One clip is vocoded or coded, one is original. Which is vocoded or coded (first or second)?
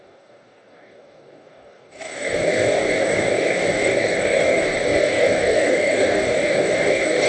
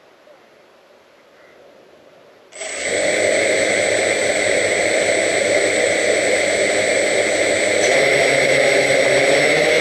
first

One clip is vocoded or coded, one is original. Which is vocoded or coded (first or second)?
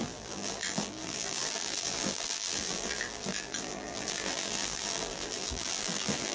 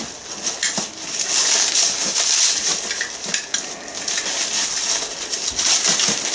first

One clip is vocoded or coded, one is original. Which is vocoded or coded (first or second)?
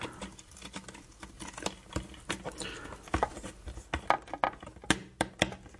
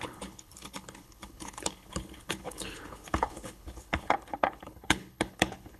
second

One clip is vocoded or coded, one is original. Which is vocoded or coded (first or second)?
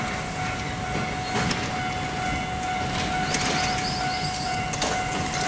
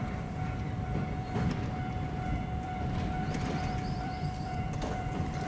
second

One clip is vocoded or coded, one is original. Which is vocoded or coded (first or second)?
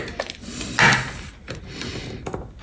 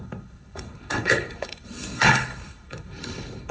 second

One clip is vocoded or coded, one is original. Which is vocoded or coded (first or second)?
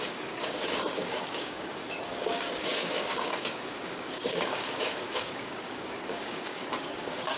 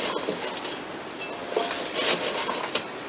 first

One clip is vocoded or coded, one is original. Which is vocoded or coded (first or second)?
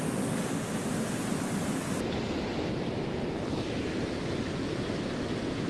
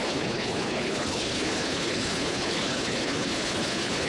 second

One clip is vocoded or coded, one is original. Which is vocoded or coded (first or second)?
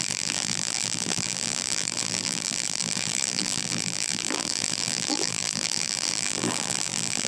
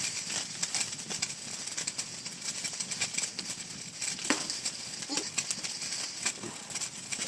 first